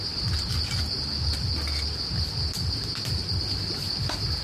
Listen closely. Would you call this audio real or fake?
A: real